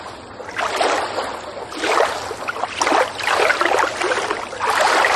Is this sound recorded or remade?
recorded